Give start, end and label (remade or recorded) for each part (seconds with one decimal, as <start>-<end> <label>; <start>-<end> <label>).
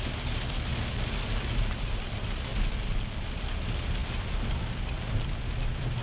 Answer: 0.0-6.0 recorded